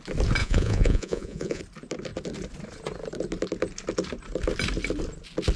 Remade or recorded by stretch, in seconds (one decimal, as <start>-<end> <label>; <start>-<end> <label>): 0.0-0.4 recorded; 0.4-1.6 remade; 1.6-5.6 recorded